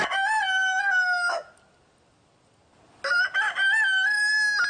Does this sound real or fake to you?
real